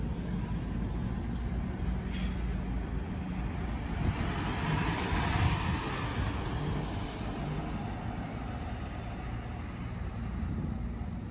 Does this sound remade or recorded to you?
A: recorded